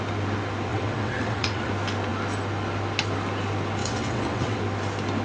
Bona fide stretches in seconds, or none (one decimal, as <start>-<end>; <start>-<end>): 0.0-0.7; 1.7-3.8; 4.6-5.2